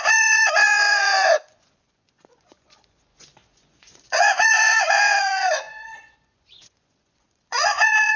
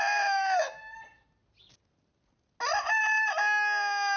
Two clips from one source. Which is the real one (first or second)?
second